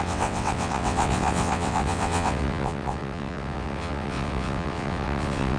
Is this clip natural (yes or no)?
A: no